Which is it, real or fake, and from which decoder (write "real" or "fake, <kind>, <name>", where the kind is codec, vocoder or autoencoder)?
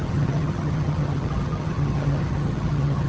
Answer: fake, vocoder, HiFi-GAN